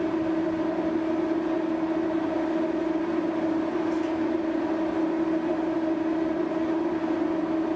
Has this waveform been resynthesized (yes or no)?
no